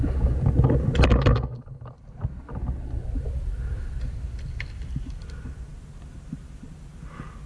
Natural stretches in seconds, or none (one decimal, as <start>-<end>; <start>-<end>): 0.0-7.5